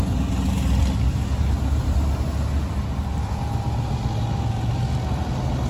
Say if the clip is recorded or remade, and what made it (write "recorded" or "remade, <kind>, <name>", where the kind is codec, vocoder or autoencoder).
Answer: recorded